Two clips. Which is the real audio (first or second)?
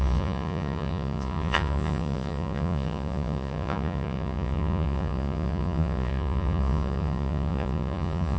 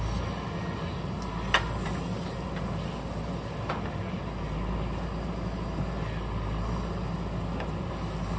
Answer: second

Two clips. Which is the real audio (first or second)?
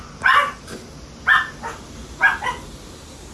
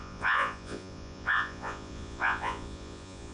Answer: first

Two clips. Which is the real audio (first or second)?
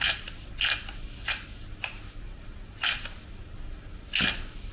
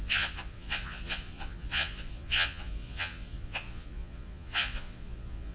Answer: first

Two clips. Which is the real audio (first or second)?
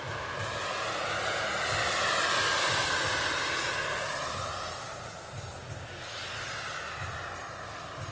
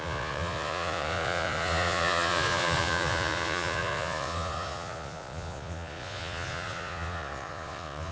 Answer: first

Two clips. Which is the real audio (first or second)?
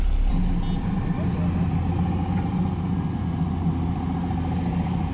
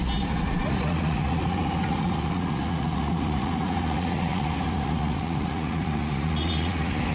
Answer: first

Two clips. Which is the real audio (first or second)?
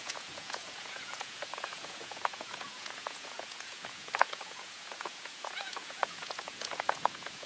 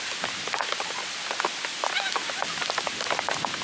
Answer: second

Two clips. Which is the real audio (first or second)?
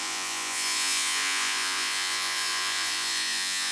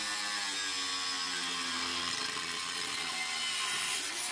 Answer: second